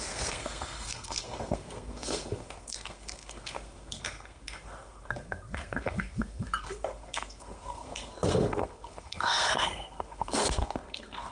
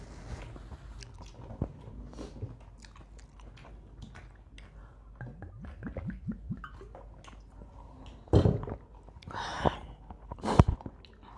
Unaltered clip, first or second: second